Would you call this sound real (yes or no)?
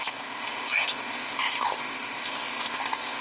no